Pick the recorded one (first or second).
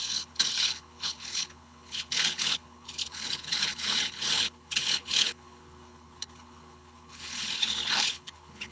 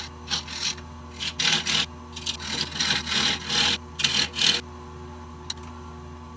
second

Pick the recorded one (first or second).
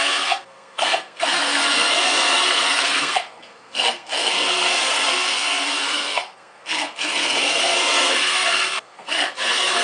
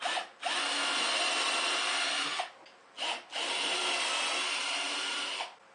second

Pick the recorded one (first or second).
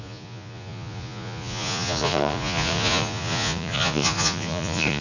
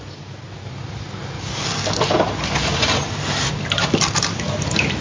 second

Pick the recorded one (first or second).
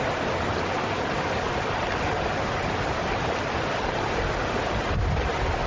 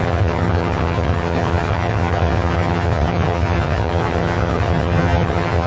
first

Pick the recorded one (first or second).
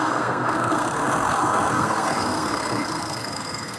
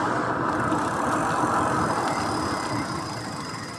second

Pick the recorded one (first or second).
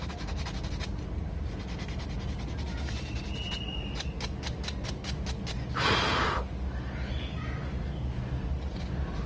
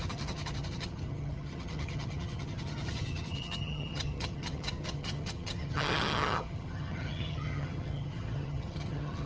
first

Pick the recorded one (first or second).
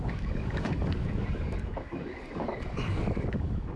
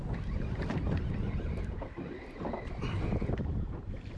second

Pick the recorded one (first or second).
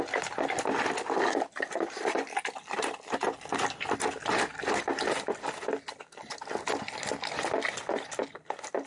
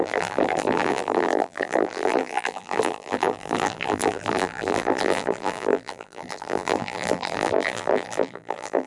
first